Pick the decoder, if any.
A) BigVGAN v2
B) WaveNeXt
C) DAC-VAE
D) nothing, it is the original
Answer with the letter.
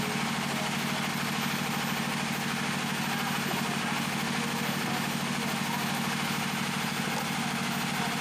D